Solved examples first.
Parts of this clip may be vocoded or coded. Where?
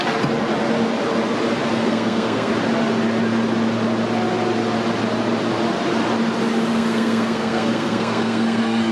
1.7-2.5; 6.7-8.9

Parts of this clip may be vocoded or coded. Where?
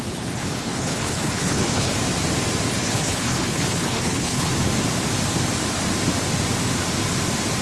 0.0-1.9; 2.7-4.5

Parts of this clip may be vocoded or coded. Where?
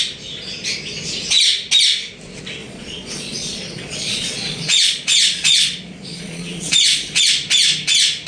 2.6-7.2